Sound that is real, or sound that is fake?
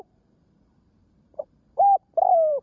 fake